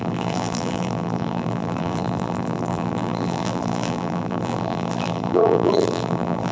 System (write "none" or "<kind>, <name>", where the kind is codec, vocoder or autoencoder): vocoder, BigVGAN v2